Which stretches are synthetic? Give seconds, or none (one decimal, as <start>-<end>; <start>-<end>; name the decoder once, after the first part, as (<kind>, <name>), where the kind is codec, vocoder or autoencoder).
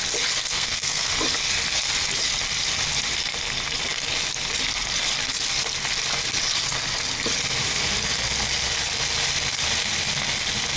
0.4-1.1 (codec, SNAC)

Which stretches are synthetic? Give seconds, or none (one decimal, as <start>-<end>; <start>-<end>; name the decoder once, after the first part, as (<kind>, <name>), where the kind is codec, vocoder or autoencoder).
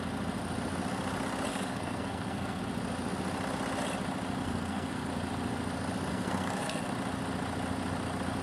1.5-2.6 (codec, SNAC); 4.4-5.1; 6.1-6.9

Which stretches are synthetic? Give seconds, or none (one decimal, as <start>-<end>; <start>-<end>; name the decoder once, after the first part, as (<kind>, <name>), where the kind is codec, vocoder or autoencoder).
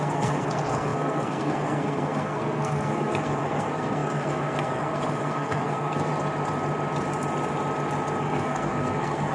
0.0-6.1 (codec, SNAC); 8.2-9.3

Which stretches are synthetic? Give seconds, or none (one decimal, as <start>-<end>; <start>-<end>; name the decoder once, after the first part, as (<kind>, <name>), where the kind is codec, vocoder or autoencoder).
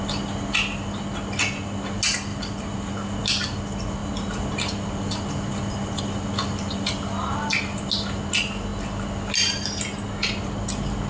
none